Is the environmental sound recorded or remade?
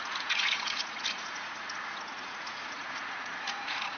remade